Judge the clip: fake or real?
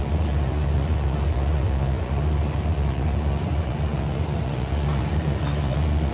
fake